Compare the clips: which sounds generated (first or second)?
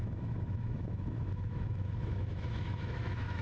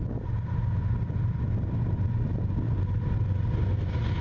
first